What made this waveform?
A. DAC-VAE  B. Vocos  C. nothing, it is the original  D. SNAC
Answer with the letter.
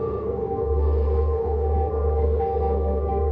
D